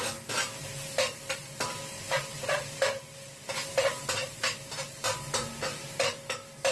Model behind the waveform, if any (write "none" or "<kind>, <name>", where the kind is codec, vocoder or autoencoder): none